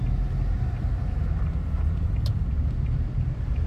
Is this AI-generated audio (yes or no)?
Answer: no